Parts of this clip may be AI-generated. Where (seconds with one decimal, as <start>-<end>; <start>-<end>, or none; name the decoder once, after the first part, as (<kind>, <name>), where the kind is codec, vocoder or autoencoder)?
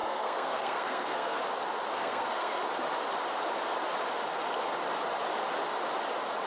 0.0-1.4 (codec, SNAC); 2.0-2.6